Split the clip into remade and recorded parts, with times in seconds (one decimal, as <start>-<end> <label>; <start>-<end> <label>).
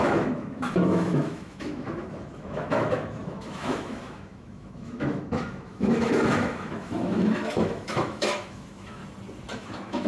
0.0-9.0 remade; 9.0-9.5 recorded; 9.5-10.1 remade